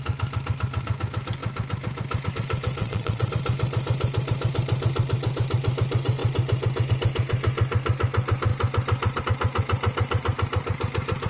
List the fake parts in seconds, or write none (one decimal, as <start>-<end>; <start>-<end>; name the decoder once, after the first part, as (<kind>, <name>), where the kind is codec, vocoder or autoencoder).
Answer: 2.8-3.3 (vocoder, Vocos)